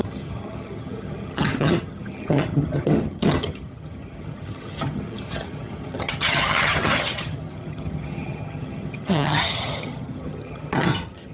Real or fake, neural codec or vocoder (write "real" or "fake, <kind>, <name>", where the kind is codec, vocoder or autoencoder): fake, vocoder, HiFi-GAN